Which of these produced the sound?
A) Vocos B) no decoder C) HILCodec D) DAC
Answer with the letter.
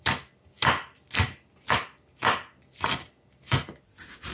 B